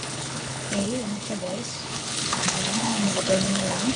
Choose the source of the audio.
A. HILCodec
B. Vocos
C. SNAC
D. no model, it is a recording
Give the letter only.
A